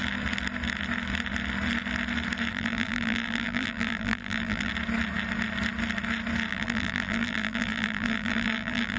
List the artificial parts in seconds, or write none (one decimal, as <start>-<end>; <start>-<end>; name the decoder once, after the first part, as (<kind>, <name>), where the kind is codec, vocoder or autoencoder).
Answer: 2.5-4.7 (vocoder, BigVGAN v2); 6.5-9.0